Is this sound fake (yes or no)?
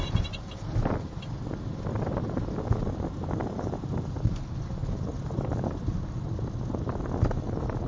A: no